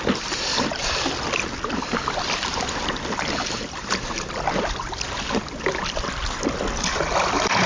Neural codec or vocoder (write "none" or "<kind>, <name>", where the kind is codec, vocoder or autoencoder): none